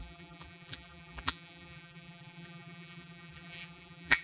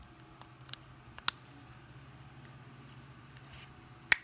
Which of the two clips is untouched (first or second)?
second